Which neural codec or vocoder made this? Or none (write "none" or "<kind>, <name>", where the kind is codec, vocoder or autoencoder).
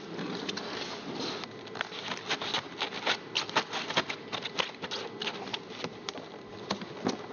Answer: none